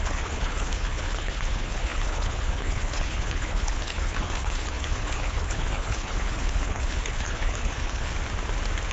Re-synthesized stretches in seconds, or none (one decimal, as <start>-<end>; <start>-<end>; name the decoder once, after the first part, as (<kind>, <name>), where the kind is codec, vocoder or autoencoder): 0.0-8.1 (codec, HILCodec)